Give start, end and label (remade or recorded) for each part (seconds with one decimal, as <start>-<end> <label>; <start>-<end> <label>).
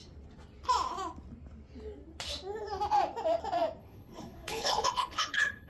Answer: 0.0-3.8 recorded; 3.8-5.7 remade